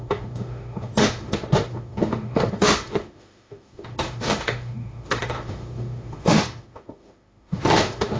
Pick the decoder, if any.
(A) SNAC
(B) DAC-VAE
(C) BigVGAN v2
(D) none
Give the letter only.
B